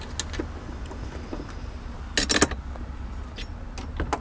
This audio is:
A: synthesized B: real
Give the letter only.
B